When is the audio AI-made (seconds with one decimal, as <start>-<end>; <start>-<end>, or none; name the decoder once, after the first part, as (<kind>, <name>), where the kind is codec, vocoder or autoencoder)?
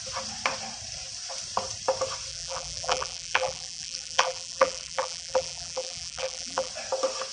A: 2.3-6.7 (vocoder, BigVGAN v2)